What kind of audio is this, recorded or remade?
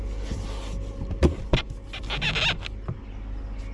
recorded